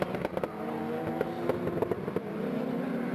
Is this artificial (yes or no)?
no